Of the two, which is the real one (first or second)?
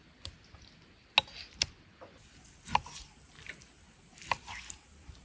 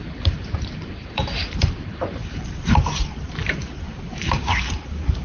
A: first